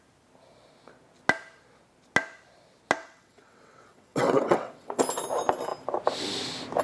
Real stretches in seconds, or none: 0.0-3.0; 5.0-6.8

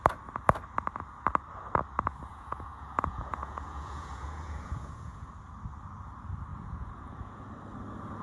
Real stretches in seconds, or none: 0.0-2.3; 5.3-6.5; 7.4-8.2

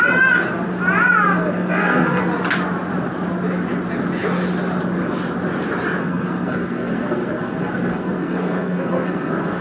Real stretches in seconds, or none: 0.0-1.4; 2.2-6.0

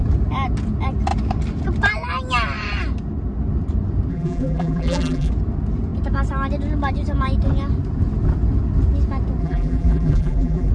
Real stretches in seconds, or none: 0.0-4.1; 5.3-9.4